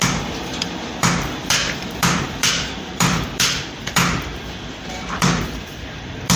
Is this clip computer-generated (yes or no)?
yes